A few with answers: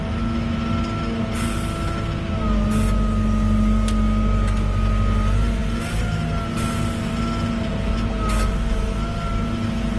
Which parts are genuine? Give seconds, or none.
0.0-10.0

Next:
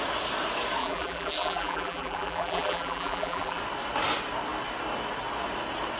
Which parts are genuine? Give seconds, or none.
0.0-0.8; 3.6-6.0

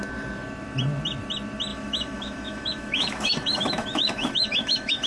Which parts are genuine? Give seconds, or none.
0.0-1.7

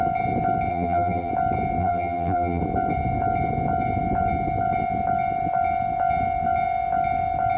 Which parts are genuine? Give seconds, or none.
0.0-0.7; 1.3-1.8; 2.6-7.6

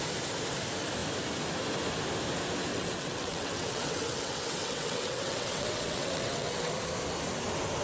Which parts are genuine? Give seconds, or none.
0.0-2.7; 6.7-7.8

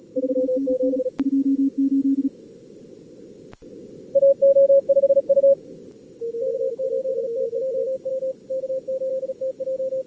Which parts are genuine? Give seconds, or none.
0.0-10.1